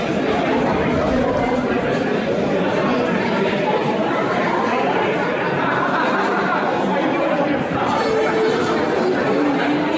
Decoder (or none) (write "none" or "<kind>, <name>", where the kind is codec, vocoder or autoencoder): vocoder, BigVGAN v2